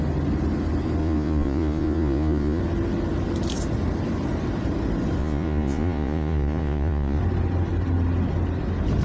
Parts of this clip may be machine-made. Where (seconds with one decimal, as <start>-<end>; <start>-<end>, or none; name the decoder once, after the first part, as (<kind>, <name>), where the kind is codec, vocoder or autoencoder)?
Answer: 1.0-2.6 (vocoder, Vocos); 5.2-7.2